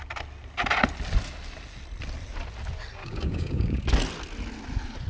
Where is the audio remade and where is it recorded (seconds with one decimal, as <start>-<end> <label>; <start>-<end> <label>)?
0.0-3.0 recorded; 3.0-3.8 remade; 3.8-5.1 recorded